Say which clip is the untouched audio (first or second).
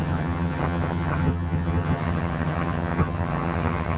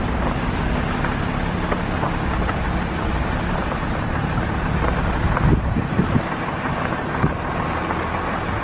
second